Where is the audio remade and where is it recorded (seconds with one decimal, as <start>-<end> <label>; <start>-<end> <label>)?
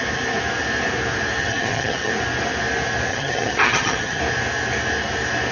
0.0-1.4 recorded; 1.4-2.1 remade; 2.1-3.1 recorded; 3.1-4.2 remade; 4.2-5.5 recorded